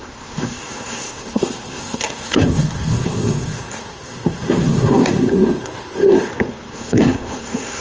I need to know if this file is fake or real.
fake